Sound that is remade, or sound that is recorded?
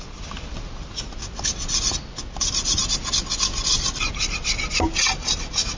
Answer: recorded